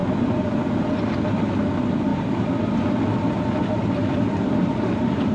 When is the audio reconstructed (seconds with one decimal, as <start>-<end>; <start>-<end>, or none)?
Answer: 1.7-2.1; 3.7-5.3